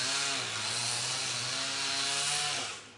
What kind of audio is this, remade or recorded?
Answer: recorded